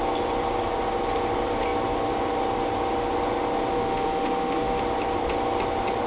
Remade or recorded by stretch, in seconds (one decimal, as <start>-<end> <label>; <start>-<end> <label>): 0.0-3.7 recorded; 3.7-4.8 remade; 4.8-6.1 recorded